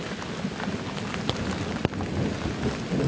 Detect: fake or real real